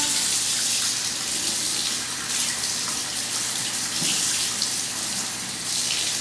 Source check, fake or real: real